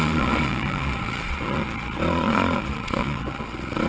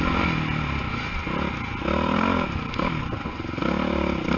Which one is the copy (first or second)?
first